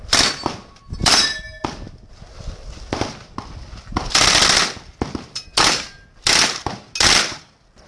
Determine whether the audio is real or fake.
real